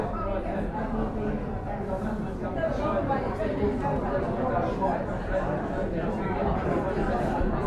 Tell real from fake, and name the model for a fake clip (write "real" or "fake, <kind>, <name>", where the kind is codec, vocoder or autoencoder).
real